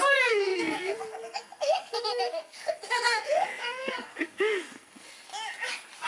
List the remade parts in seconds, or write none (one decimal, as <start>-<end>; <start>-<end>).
0.0-5.3